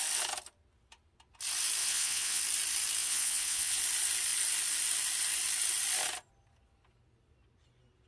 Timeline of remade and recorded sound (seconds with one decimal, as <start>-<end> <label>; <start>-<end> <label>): 0.0-1.8 recorded; 1.8-2.4 remade; 2.4-3.0 recorded; 3.0-3.8 remade; 3.8-8.1 recorded